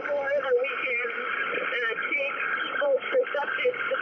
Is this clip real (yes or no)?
yes